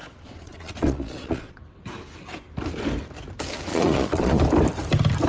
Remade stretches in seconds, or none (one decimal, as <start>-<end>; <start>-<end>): 0.0-1.6; 3.7-4.4